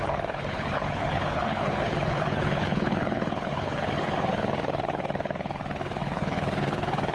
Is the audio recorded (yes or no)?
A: no